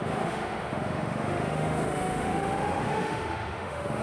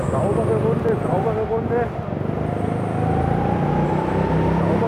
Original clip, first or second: second